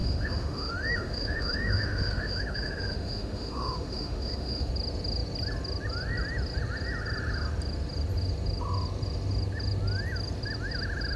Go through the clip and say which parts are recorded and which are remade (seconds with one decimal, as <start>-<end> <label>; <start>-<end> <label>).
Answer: 0.0-4.7 remade; 4.7-11.2 recorded

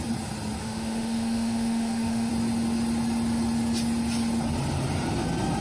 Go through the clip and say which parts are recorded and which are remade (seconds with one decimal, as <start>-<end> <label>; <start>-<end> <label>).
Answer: 0.0-0.6 recorded; 0.6-2.3 remade; 2.3-5.6 recorded

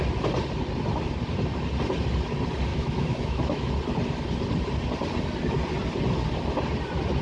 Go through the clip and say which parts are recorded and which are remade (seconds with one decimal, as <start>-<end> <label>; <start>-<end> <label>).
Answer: 0.0-2.7 recorded; 2.7-3.7 remade; 3.7-7.2 recorded

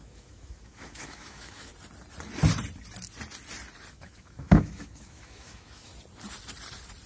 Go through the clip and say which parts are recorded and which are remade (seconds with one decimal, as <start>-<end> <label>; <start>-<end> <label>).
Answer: 0.0-1.7 remade; 1.7-3.9 recorded; 3.9-5.9 remade; 5.9-7.1 recorded